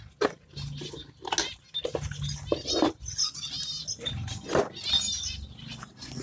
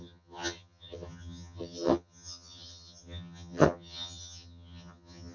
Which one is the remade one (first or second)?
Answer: second